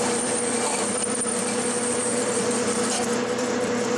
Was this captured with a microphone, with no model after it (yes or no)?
no